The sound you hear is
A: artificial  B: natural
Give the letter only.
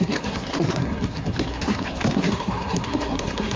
A